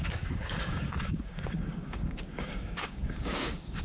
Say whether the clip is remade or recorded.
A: remade